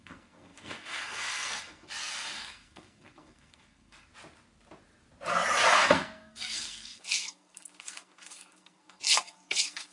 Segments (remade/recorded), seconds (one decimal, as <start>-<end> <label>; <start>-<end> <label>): 0.0-4.1 remade; 4.1-5.7 recorded; 5.7-9.9 remade